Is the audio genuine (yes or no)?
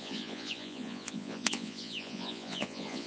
no